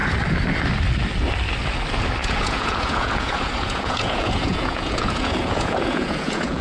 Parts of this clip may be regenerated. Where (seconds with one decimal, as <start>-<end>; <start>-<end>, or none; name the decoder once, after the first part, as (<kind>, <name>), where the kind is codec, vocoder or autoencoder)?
2.2-6.6 (vocoder, Vocos)

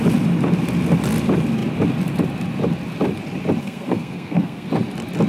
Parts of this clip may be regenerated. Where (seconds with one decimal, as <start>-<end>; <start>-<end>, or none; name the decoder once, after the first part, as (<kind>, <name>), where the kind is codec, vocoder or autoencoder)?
3.6-4.7 (codec, SNAC)

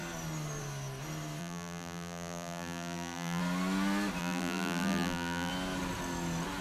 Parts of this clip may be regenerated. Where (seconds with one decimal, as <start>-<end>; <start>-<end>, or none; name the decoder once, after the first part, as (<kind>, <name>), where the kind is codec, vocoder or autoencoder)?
1.4-3.4 (vocoder, BigVGAN v2); 4.2-5.5

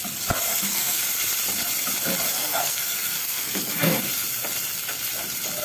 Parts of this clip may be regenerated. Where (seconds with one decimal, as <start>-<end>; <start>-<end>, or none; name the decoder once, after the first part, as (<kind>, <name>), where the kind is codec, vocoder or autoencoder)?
0.5-1.0 (codec, SNAC); 2.3-4.0

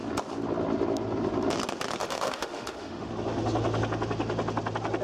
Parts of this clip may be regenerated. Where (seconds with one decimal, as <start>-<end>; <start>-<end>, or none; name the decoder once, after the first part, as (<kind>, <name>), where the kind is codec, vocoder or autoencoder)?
2.0-3.1 (autoencoder, DAC-VAE)

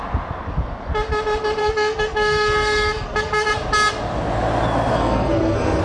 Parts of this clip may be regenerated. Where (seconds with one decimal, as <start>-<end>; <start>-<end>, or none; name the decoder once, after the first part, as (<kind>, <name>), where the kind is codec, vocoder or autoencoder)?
1.6-3.5 (codec, SNAC); 4.9-5.8

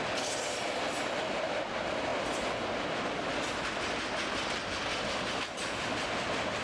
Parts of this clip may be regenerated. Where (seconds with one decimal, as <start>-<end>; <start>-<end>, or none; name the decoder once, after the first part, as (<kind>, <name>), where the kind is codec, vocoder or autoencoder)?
none

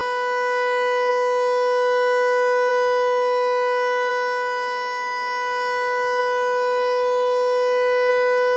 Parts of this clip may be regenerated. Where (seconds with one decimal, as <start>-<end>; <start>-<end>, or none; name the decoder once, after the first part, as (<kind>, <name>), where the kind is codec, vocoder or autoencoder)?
none